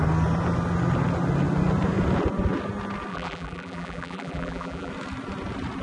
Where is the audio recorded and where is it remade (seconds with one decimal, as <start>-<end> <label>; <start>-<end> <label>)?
0.0-3.1 recorded; 3.1-4.9 remade; 4.9-5.8 recorded